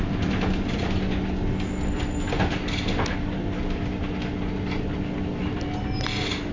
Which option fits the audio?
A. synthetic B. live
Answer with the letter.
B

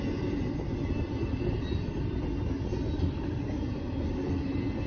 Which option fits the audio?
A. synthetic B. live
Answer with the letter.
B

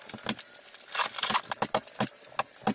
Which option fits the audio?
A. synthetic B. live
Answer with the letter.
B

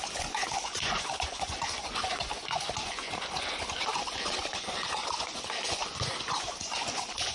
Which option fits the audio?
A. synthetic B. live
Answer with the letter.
A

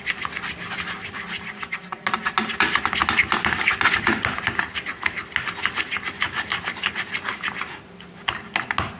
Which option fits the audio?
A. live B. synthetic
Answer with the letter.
A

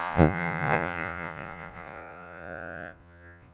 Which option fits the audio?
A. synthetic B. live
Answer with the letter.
A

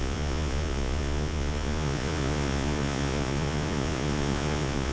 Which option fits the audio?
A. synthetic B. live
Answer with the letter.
A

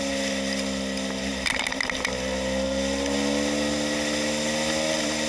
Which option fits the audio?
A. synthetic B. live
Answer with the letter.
B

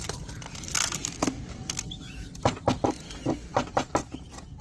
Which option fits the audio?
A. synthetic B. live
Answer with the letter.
B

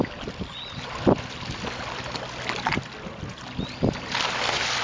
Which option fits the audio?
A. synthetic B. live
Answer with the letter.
B